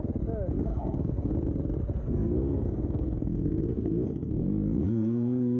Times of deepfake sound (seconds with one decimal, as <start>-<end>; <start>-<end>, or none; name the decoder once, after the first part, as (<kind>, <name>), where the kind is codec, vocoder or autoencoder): 0.7-1.3 (codec, SNAC); 2.0-5.6